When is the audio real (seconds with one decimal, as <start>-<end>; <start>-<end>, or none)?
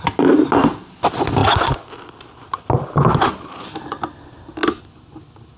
0.0-5.6